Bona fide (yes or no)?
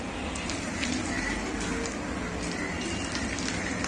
yes